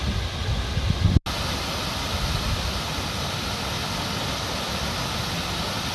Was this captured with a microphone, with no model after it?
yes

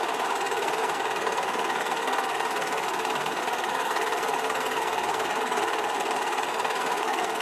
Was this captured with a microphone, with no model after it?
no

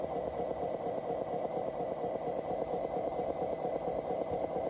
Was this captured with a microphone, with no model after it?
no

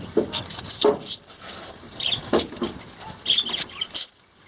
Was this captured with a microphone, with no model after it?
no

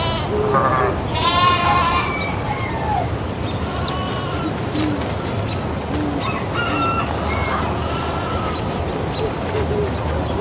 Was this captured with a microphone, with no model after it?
yes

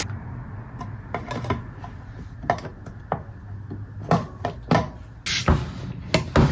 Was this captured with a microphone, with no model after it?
yes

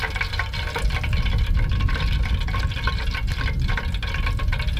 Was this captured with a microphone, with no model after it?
yes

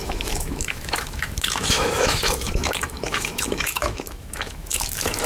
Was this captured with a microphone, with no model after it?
no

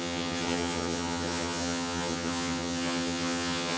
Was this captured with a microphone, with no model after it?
no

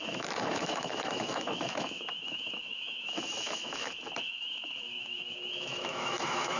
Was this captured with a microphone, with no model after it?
no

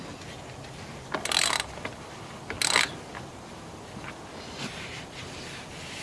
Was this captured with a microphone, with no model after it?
yes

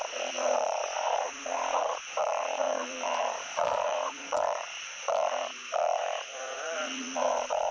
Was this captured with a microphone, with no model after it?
no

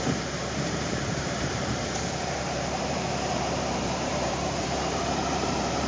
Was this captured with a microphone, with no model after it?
no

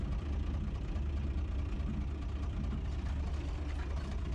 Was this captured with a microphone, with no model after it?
yes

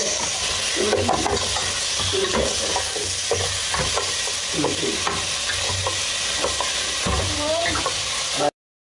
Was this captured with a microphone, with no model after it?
yes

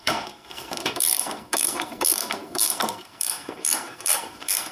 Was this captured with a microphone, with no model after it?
no